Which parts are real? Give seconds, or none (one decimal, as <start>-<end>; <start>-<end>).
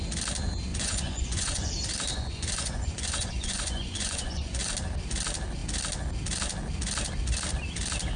0.0-0.7; 1.7-2.1; 4.7-8.2